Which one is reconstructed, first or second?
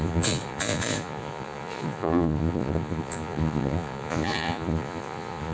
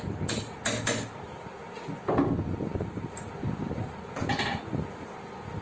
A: first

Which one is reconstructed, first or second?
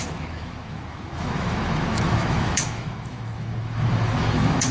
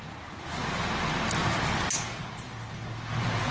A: first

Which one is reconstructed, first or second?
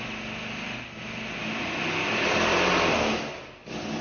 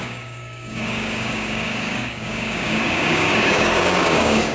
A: second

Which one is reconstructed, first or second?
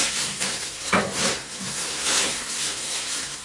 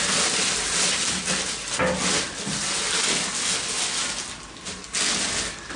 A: first